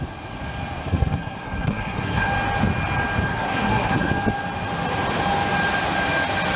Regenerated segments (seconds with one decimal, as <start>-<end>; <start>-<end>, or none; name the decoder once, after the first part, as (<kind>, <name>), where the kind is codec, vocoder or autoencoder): 0.8-2.3 (codec, SNAC); 3.3-4.1